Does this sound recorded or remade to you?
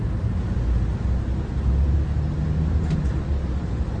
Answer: recorded